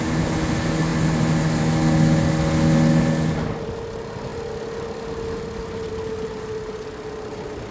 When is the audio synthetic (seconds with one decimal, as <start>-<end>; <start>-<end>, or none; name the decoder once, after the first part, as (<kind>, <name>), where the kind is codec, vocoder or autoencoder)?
none